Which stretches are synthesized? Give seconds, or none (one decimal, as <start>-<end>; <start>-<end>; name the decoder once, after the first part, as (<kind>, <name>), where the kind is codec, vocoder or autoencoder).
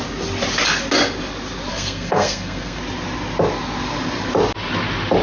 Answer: 1.7-2.8 (codec, SNAC)